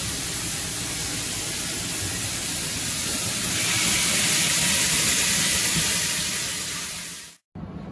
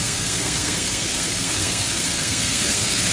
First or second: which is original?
first